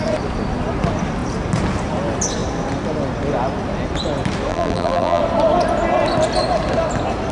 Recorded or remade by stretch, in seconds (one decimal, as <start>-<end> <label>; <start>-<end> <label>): 0.0-4.5 recorded; 4.5-5.2 remade; 5.2-7.3 recorded